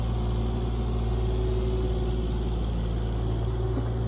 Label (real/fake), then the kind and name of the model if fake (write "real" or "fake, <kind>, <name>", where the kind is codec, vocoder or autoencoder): real